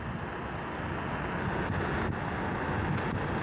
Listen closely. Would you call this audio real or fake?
real